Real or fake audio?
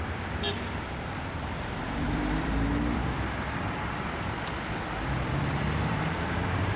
fake